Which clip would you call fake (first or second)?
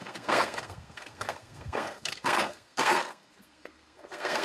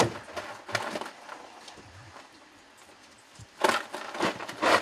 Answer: first